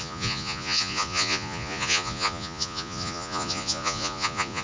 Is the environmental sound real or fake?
fake